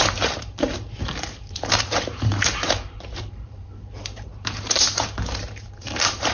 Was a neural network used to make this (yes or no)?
yes